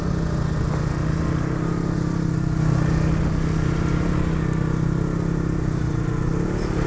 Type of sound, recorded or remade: recorded